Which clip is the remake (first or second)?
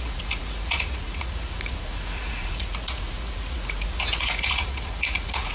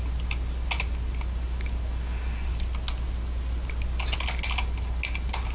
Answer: first